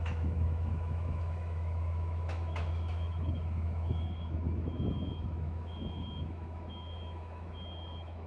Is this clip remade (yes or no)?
yes